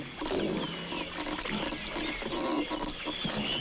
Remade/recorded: recorded